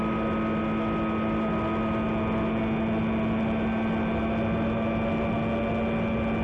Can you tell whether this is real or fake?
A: real